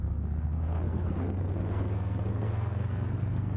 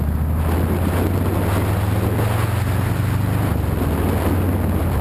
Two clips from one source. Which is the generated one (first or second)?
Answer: first